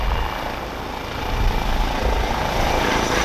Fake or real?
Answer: real